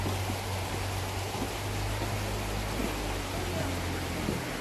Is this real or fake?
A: real